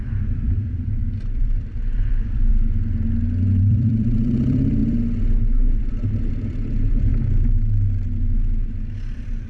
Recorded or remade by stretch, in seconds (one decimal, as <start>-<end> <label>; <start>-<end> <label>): 0.0-2.5 remade; 2.5-3.6 recorded; 3.6-7.1 remade; 7.1-8.7 recorded; 8.7-9.5 remade